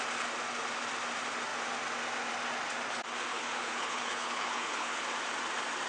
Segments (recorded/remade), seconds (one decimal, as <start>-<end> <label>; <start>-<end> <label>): 0.0-3.3 recorded; 3.3-5.0 remade; 5.0-5.9 recorded